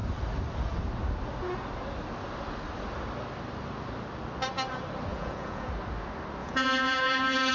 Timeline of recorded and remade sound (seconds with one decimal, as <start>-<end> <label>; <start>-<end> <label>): 0.0-5.1 recorded; 5.1-5.7 remade; 5.7-6.4 recorded; 6.4-7.5 remade